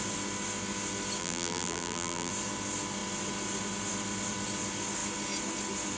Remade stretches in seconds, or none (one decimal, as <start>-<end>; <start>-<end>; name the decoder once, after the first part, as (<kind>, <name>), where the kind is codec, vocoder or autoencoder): 1.2-2.3 (vocoder, BigVGAN v2)